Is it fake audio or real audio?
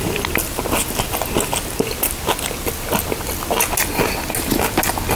real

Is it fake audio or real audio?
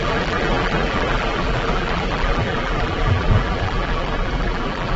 fake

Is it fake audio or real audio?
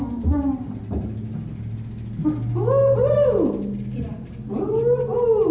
real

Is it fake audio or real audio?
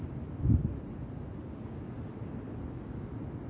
real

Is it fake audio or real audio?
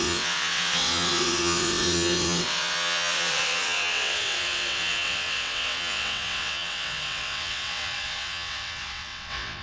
fake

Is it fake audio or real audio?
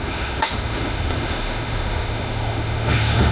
fake